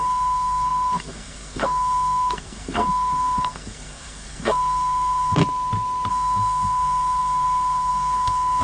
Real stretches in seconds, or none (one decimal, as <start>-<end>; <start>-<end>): 5.4-6.1